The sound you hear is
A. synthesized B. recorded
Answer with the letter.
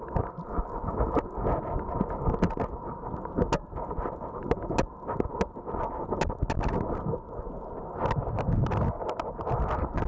B